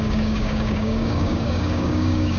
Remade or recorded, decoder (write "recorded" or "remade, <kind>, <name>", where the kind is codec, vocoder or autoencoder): remade, codec, DAC